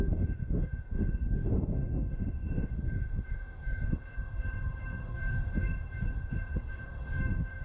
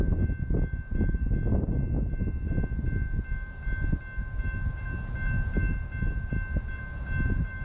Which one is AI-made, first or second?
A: first